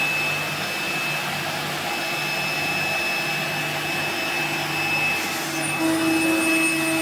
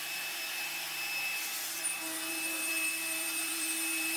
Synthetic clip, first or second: second